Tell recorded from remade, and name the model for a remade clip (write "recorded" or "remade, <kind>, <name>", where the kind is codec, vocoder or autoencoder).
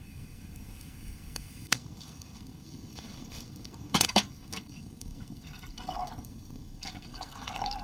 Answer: remade, codec, SNAC